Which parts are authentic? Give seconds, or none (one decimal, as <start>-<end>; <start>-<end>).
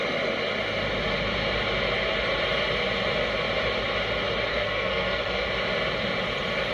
0.0-4.5; 5.5-6.7